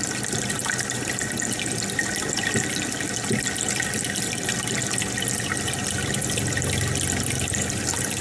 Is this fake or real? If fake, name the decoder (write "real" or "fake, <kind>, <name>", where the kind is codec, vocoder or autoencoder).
real